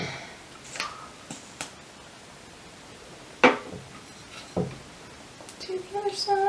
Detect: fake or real real